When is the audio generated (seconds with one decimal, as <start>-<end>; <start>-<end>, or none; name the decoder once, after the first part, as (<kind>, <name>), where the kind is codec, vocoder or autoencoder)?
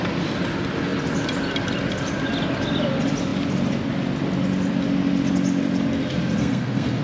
6.4-7.0 (codec, SNAC)